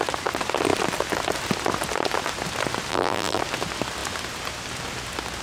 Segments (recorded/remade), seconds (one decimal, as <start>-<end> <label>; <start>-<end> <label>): 0.0-2.9 recorded; 2.9-3.4 remade; 3.4-5.4 recorded